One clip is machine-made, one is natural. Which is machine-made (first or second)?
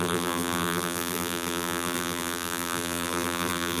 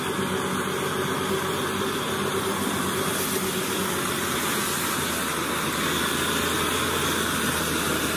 first